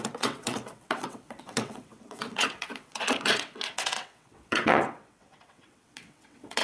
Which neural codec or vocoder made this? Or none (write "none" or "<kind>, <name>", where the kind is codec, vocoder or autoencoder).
vocoder, WaveNeXt